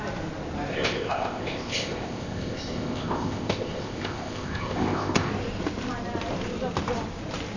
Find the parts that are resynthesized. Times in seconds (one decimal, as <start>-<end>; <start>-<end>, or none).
0.7-5.3